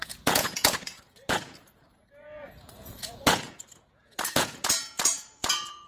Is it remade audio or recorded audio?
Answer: remade